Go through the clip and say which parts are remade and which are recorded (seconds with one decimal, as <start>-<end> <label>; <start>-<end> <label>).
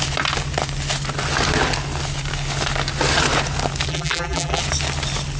0.0-3.9 recorded; 3.9-4.6 remade; 4.6-5.4 recorded